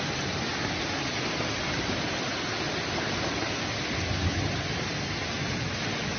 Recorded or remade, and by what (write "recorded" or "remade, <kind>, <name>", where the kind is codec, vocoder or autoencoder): recorded